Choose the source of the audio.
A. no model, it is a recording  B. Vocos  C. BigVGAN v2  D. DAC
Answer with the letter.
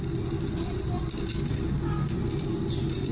A